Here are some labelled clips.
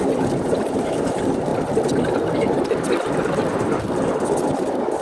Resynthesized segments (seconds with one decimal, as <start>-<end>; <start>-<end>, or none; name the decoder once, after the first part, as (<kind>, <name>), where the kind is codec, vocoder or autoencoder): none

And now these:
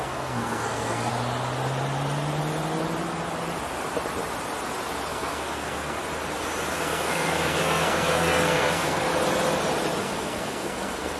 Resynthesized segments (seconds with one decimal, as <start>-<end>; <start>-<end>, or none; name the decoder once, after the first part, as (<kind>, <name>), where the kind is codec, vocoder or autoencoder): 0.0-1.1 (codec, SNAC); 5.1-6.0; 6.7-9.1; 10.0-11.2

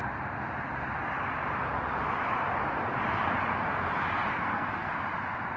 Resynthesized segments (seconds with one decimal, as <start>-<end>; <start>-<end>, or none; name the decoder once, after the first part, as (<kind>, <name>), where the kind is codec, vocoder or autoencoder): 4.3-4.9 (codec, SNAC)

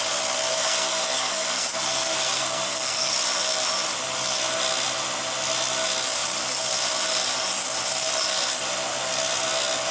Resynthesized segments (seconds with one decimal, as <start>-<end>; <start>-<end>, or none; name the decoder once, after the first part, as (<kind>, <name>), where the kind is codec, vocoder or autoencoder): 0.5-3.1 (codec, SNAC)